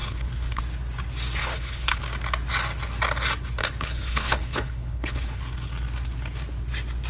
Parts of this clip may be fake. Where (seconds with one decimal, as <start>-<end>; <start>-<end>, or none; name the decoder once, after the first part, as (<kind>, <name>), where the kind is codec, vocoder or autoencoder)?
0.0-0.6 (codec, HILCodec); 1.4-2.0; 3.6-5.4